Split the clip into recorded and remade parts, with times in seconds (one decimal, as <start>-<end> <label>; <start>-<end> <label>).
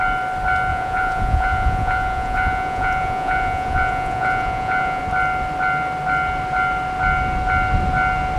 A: 0.0-0.7 recorded; 0.7-5.0 remade; 5.0-8.4 recorded